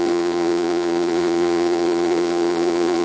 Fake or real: fake